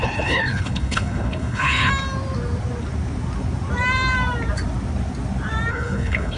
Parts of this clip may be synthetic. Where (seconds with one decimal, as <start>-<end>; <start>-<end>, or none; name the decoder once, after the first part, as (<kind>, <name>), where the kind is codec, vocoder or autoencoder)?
0.0-1.9 (codec, HILCodec); 5.7-6.4